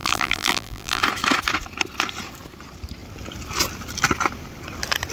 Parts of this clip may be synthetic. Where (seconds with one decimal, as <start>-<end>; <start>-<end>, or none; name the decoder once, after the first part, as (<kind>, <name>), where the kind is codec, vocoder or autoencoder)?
0.0-1.0 (vocoder, BigVGAN v2)